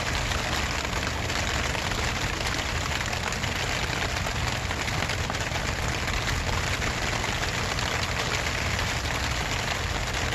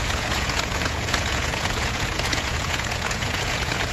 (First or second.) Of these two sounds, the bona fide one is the first